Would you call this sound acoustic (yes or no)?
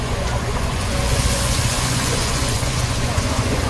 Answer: no